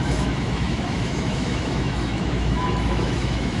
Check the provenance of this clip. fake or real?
fake